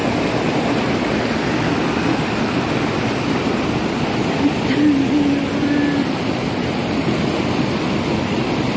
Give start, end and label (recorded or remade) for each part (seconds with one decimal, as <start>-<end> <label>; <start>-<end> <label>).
0.0-8.8 recorded